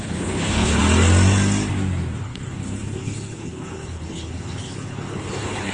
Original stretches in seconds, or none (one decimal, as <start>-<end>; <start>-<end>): 0.8-2.2